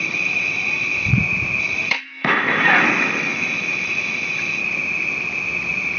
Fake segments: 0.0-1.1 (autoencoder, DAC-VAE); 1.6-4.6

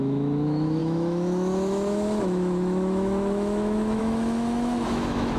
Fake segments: 0.0-5.4 (autoencoder, DAC-VAE)

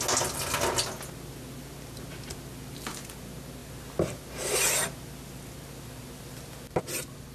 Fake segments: none

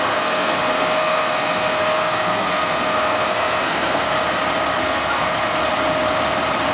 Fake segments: 0.0-4.2 (codec, SNAC); 4.8-5.6

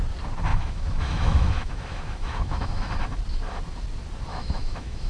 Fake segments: 0.5-2.9 (autoencoder, DAC-VAE); 4.3-5.1